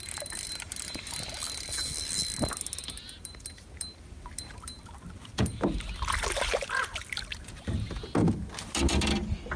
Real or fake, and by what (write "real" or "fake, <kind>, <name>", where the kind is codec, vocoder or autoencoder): real